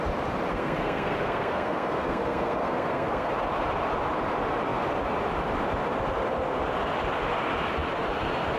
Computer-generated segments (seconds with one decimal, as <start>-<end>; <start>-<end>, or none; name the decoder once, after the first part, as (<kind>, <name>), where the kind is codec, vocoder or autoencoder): 0.5-3.3 (codec, SNAC)